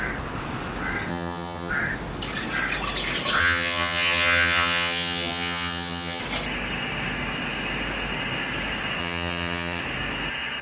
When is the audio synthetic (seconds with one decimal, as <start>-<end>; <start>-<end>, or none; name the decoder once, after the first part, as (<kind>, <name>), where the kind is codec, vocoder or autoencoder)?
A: 1.1-1.7 (vocoder, HiFi-GAN); 3.4-6.2; 9.0-9.8